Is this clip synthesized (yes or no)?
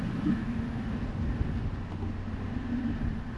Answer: no